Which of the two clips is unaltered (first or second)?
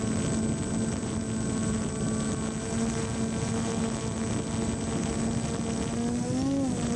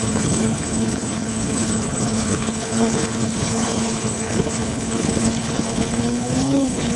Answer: first